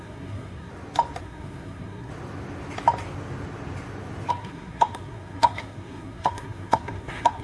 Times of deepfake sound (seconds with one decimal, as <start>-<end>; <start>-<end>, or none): 0.0-0.7; 1.2-2.1; 4.3-7.4